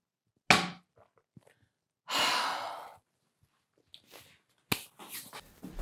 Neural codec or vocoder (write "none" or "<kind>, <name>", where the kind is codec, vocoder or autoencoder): none